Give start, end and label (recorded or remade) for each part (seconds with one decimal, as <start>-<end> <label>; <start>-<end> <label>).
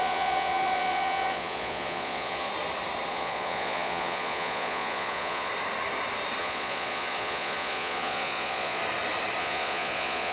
0.0-2.5 remade; 2.5-3.1 recorded; 3.1-5.5 remade; 5.5-6.4 recorded; 6.4-8.8 remade; 8.8-9.4 recorded; 9.4-10.3 remade